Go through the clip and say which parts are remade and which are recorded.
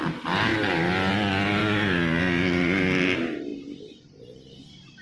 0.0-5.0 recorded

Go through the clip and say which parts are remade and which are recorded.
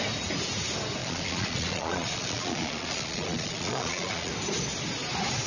0.0-1.0 recorded; 1.0-4.3 remade; 4.3-5.5 recorded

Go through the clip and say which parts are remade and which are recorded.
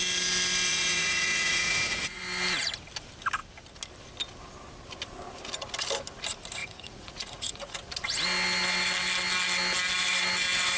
0.0-0.7 recorded; 0.7-2.2 remade; 2.2-6.6 recorded; 6.6-7.8 remade; 7.8-10.8 recorded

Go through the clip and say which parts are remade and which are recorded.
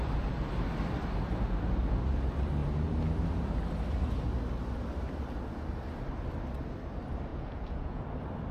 0.0-7.3 recorded; 7.3-8.0 remade; 8.0-8.5 recorded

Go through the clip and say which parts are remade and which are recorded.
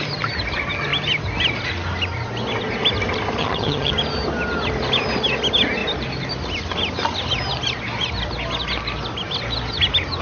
0.0-3.4 recorded; 3.4-3.9 remade; 3.9-10.2 recorded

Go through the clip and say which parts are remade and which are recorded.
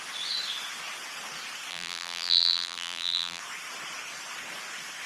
0.0-1.7 recorded; 1.7-3.4 remade; 3.4-5.1 recorded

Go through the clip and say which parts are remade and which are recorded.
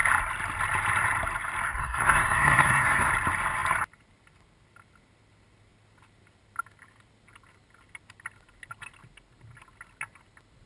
0.0-1.8 recorded; 1.8-3.1 remade; 3.1-10.7 recorded